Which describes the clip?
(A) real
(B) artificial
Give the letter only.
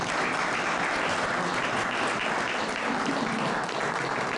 A